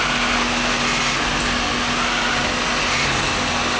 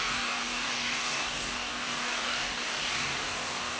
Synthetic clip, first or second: second